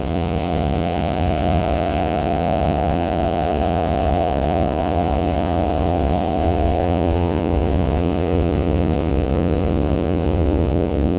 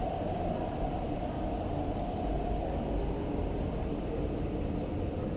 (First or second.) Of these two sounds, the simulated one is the first